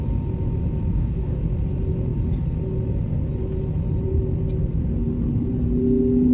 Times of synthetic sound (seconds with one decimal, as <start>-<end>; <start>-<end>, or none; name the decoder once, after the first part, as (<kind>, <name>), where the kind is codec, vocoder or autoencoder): 0.9-1.4 (codec, DAC)